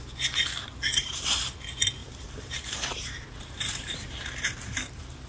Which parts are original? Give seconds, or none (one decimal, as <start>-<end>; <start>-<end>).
0.0-0.9; 1.4-2.0; 4.8-5.3